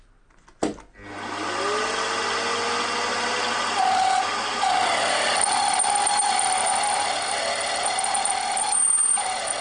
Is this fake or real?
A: real